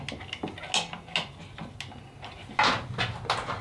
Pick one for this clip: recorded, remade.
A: recorded